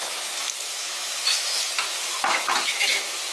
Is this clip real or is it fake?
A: fake